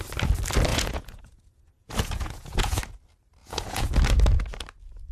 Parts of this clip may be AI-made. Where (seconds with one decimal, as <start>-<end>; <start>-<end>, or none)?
0.7-2.8; 3.4-3.9